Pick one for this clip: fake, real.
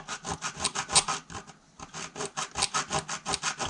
real